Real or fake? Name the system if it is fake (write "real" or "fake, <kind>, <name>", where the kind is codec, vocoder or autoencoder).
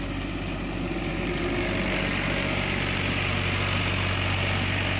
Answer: real